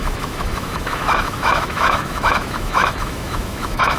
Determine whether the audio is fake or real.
fake